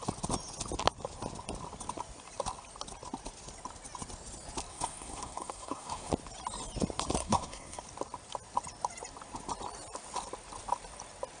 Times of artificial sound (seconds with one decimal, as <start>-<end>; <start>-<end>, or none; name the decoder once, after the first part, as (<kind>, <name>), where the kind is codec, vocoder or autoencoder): 4.7-6.1 (codec, SNAC); 7.2-7.8